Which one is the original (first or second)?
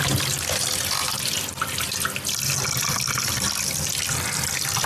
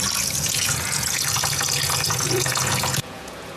first